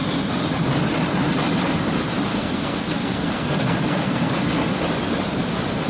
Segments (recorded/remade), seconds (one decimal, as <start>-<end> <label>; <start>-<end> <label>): 0.0-2.3 recorded; 2.3-4.3 remade; 4.3-5.9 recorded